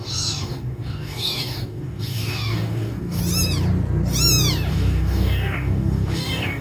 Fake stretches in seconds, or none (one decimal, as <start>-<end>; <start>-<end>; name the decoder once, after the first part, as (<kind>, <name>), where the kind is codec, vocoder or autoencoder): 0.0-3.2 (codec, DAC); 4.7-6.6